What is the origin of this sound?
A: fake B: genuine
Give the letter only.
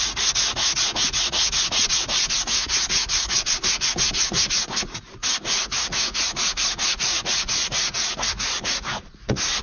A